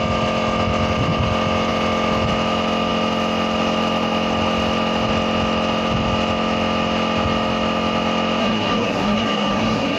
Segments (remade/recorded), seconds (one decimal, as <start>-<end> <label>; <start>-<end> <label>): 0.0-8.4 recorded; 8.4-10.0 remade